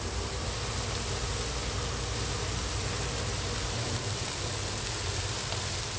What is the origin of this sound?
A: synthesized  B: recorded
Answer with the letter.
B